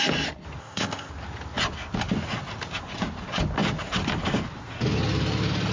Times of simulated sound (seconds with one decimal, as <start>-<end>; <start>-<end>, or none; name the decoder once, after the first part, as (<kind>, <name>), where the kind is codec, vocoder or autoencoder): 0.6-1.1 (codec, ZipCodec)